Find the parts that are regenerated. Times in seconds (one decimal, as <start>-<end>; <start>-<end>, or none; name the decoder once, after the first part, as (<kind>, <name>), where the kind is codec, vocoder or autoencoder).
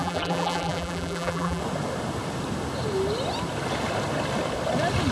0.0-1.6 (vocoder, BigVGAN v2)